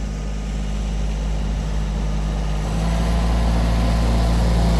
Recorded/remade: recorded